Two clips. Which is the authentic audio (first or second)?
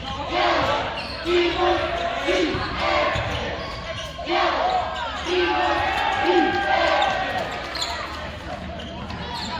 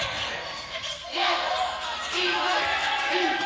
first